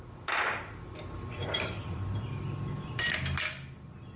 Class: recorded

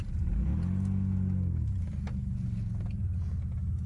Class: recorded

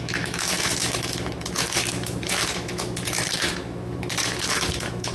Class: remade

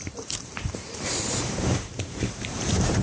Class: remade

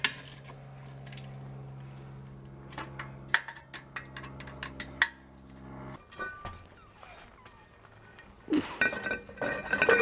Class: recorded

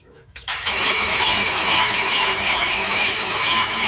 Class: remade